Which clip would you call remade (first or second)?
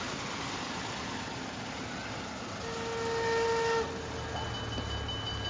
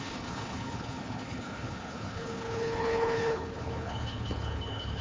second